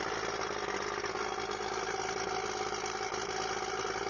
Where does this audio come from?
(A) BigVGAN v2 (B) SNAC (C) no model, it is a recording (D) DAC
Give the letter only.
C